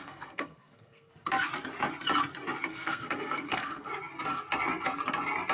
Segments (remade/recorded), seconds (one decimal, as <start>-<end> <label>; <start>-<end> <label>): 0.0-1.1 remade; 1.1-2.7 recorded; 2.7-3.9 remade; 3.9-5.5 recorded